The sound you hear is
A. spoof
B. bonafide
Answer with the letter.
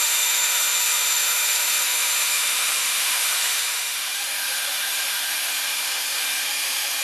A